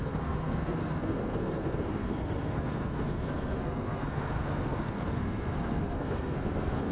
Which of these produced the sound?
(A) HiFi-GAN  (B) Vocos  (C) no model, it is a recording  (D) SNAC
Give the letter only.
D